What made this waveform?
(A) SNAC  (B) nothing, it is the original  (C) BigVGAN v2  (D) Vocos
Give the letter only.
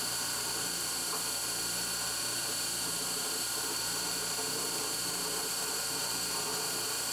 C